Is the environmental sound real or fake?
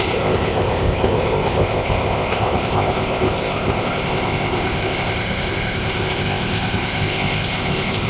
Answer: fake